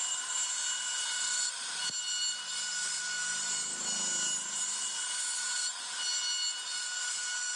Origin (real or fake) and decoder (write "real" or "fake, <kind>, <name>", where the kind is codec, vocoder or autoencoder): real